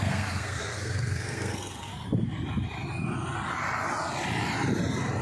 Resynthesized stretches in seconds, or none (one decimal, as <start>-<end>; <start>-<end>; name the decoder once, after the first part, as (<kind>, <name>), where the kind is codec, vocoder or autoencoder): 0.0-1.9 (codec, SNAC)